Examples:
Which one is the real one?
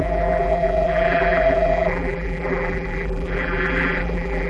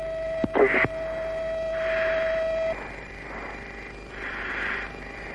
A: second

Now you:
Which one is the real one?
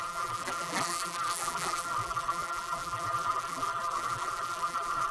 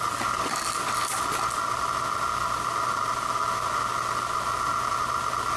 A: second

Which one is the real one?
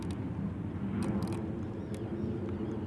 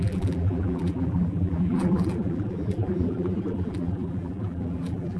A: first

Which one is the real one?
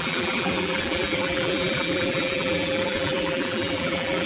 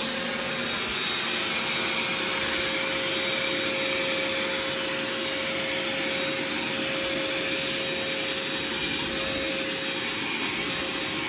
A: second